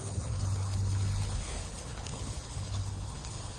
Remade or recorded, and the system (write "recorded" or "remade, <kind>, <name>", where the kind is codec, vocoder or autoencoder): remade, codec, HILCodec